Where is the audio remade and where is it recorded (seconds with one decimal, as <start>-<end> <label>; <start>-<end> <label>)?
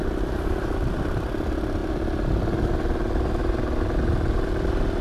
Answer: 0.0-5.0 recorded